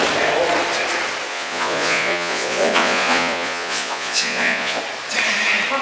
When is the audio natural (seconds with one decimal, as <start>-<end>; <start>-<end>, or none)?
0.0-1.3; 4.8-5.8